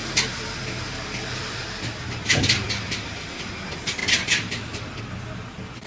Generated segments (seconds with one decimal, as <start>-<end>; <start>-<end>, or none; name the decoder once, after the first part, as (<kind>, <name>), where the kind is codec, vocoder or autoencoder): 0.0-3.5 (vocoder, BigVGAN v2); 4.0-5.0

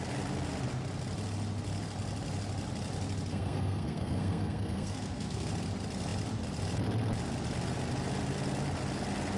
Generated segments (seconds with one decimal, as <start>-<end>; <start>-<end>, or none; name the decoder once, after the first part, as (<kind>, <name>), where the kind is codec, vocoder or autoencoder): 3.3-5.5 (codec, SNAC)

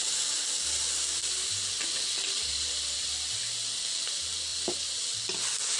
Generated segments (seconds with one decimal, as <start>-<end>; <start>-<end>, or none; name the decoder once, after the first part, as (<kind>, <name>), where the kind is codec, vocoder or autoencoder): 2.5-3.6 (vocoder, BigVGAN v2); 4.5-5.2

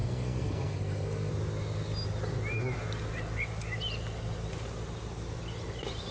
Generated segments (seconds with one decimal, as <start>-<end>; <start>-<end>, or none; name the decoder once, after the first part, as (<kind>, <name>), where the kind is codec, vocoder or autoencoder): 0.0-1.3 (codec, SNAC)